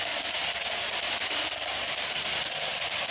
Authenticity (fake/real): real